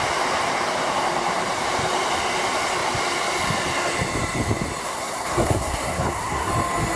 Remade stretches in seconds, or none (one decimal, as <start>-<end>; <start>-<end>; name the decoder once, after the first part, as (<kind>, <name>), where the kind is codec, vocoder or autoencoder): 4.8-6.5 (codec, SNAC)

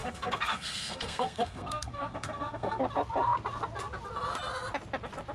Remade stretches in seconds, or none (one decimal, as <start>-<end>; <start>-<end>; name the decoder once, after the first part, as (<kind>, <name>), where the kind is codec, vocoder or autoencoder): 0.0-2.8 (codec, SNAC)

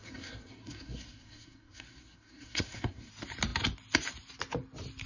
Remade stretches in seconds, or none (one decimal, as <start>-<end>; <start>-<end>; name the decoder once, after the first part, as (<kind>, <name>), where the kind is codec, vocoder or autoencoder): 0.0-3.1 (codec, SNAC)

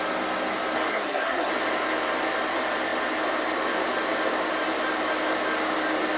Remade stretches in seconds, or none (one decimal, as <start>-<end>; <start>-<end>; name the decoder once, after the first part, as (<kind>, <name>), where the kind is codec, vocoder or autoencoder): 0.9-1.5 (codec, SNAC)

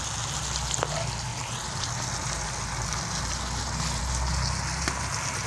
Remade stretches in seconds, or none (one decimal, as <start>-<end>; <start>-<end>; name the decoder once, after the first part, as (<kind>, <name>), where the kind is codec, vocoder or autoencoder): none

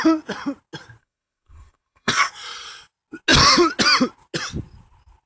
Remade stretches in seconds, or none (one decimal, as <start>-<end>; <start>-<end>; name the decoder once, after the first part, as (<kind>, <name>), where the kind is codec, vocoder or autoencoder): 1.0-2.3 (codec, SNAC)

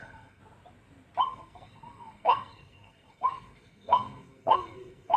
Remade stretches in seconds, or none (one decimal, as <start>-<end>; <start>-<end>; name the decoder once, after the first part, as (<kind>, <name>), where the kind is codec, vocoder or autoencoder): 0.0-0.4 (codec, SNAC); 1.2-5.2